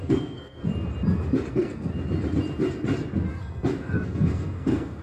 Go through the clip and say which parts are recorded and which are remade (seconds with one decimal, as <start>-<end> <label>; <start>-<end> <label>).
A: 0.0-0.6 remade; 0.6-1.5 recorded; 1.5-1.9 remade; 1.9-3.3 recorded; 3.3-5.0 remade